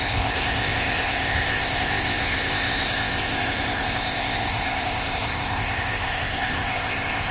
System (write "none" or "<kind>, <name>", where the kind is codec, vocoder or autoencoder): codec, ZipCodec